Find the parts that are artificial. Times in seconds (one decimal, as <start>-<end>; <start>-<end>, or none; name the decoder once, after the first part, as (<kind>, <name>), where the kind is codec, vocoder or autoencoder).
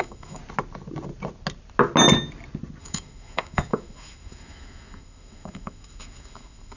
0.0-0.4 (autoencoder, DAC-VAE); 2.8-6.8